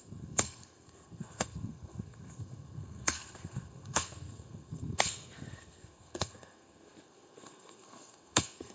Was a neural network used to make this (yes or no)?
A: yes